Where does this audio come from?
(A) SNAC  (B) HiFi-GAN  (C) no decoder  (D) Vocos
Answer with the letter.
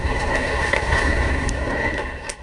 A